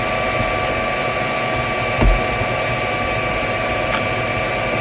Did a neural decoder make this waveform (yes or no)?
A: no